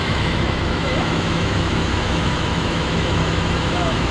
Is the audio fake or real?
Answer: fake